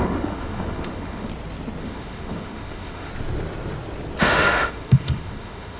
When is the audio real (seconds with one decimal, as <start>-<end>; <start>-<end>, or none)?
1.3-1.8; 3.1-4.2